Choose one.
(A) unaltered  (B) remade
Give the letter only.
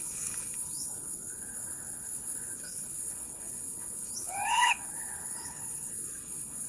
B